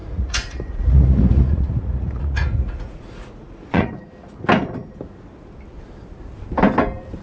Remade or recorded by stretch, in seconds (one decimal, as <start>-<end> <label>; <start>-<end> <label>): 0.0-3.9 remade; 3.9-7.2 recorded